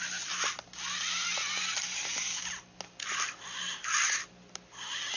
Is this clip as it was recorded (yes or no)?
yes